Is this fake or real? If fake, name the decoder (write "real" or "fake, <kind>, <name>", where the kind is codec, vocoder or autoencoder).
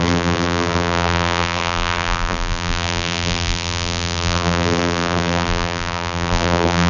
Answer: fake, vocoder, BigVGAN v2